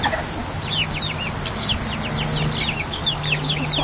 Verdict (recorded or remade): recorded